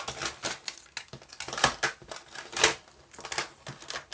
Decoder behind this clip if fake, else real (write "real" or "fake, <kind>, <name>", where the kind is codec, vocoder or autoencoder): real